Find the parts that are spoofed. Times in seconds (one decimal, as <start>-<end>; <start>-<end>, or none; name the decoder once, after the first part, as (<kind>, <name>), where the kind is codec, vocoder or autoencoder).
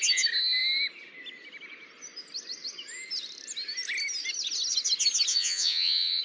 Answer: 5.3-6.2 (vocoder, Vocos)